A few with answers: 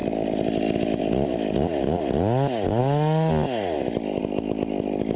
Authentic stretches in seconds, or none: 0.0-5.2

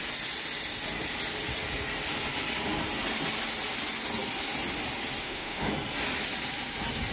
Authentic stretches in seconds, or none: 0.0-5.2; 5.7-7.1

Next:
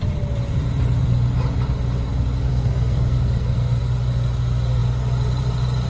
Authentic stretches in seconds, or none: 0.0-2.5; 3.8-5.9

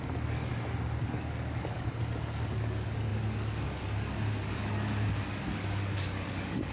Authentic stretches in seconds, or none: 0.5-1.0

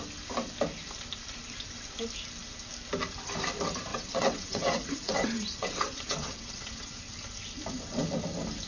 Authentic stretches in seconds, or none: 0.0-3.9; 7.0-8.7

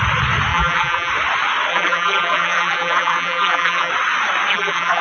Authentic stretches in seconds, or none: 0.0-0.5; 1.1-1.7; 3.9-4.5

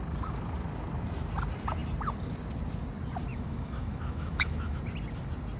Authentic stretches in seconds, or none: 0.0-3.3; 4.8-5.6

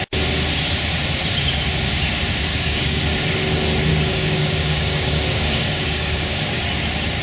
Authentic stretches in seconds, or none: 0.0-2.5; 3.0-3.9; 6.6-7.2